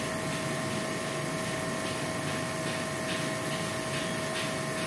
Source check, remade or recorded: recorded